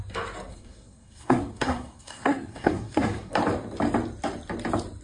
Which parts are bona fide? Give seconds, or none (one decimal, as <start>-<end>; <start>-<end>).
0.0-0.5; 3.3-5.0

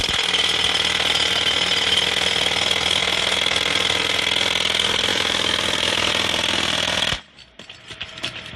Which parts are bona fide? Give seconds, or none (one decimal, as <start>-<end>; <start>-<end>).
0.0-5.1; 6.1-8.6

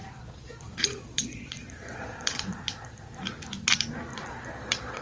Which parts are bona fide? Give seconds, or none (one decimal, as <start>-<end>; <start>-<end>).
3.0-4.1

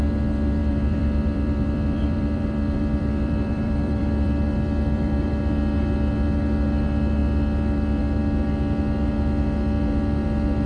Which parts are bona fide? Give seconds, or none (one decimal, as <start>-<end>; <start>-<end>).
0.0-0.6; 5.4-10.7

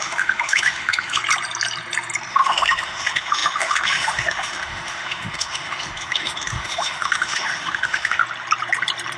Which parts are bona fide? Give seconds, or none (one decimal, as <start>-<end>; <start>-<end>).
1.2-2.3; 8.2-9.2

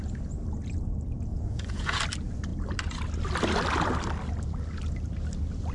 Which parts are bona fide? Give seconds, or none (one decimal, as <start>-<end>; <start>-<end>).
0.0-1.3; 2.0-5.7

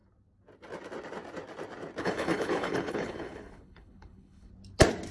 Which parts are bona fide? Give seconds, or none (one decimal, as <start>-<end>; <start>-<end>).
0.0-2.0; 4.5-5.1